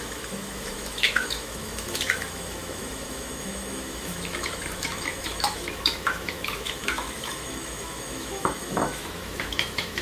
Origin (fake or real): fake